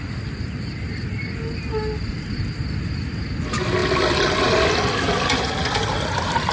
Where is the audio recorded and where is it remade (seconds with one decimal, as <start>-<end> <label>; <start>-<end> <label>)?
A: 0.0-6.5 recorded